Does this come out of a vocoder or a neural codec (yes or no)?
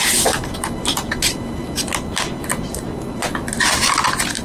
no